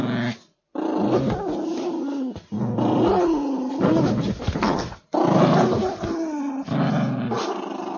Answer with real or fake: real